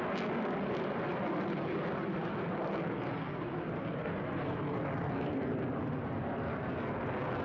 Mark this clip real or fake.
real